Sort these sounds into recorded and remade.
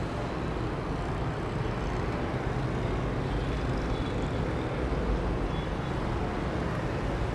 recorded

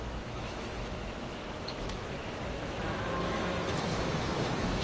remade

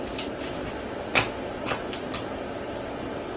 recorded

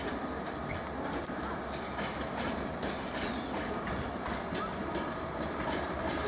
recorded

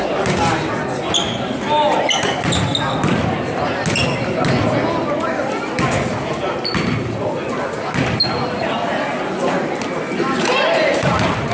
recorded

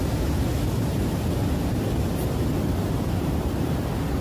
recorded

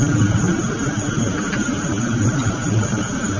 recorded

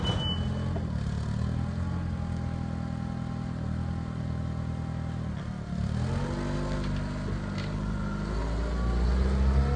recorded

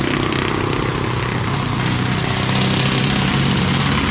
recorded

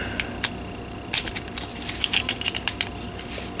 recorded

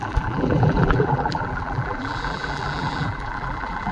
remade